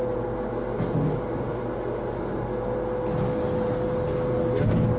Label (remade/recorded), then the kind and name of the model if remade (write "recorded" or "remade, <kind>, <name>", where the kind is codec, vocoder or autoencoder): recorded